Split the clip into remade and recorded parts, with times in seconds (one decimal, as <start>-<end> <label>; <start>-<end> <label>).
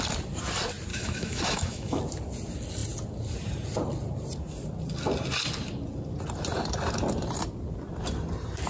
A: 0.0-0.9 recorded; 0.9-2.0 remade; 2.0-8.7 recorded